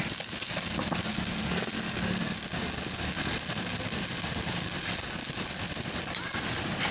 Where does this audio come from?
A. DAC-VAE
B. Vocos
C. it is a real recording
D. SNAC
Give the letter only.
C